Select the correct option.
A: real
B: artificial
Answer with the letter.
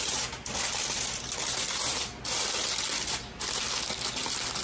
A